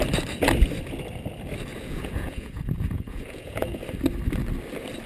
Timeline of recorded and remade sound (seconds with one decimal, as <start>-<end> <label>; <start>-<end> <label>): 0.0-1.7 recorded; 1.7-3.8 remade; 3.8-5.1 recorded